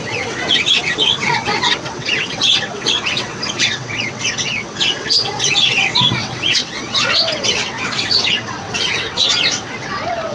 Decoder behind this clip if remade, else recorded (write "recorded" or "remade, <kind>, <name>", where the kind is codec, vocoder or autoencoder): remade, vocoder, WaveNeXt